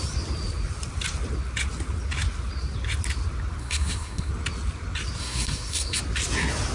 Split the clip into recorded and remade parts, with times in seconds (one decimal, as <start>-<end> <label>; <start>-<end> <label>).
0.0-3.6 recorded; 3.6-4.3 remade; 4.3-5.2 recorded; 5.2-6.0 remade; 6.0-6.7 recorded